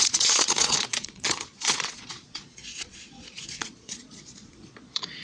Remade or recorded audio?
remade